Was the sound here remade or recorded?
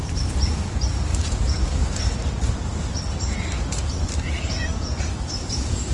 recorded